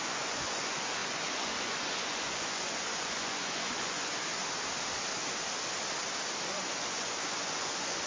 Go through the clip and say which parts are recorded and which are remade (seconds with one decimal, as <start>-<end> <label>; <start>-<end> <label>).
0.0-4.4 remade; 4.4-6.5 recorded; 6.5-8.1 remade